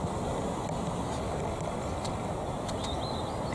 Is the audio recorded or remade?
recorded